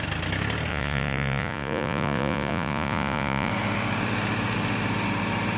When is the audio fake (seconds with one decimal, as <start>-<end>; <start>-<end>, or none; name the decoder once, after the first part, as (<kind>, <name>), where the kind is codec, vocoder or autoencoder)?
0.7-3.5 (vocoder, Vocos)